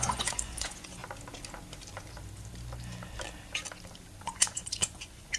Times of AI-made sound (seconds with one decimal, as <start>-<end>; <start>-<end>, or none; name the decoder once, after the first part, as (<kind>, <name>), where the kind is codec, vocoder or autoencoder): 0.0-1.0 (vocoder, Vocos); 4.2-5.4